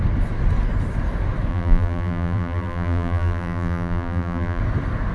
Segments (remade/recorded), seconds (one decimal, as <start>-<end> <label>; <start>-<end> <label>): 0.0-1.5 recorded; 1.5-4.6 remade; 4.6-5.1 recorded